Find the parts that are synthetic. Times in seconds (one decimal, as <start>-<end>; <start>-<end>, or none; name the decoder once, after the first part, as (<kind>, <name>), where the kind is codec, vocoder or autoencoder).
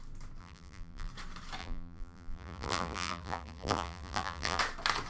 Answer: 0.4-1.1 (vocoder, BigVGAN v2); 1.6-4.6